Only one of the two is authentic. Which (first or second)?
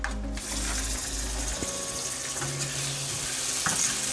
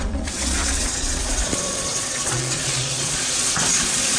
first